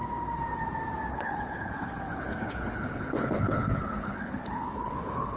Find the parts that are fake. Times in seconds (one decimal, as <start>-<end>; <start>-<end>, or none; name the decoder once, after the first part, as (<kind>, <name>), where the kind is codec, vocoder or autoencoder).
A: 1.1-5.4 (codec, HILCodec)